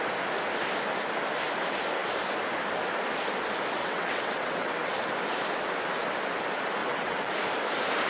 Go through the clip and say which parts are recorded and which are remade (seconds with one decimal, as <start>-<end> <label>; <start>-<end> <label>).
0.0-3.8 recorded; 3.8-4.9 remade; 4.9-6.8 recorded; 6.8-7.3 remade; 7.3-8.1 recorded